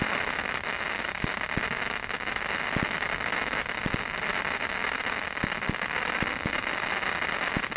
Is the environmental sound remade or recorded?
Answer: recorded